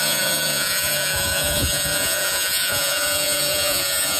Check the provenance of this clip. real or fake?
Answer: fake